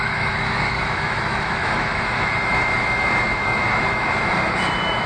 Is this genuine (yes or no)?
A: no